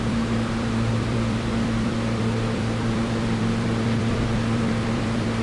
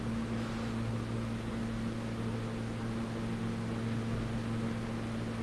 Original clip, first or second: second